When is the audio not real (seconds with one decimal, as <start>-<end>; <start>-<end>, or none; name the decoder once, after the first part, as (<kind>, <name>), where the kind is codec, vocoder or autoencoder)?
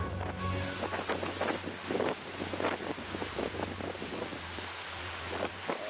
4.1-5.5 (vocoder, Vocos)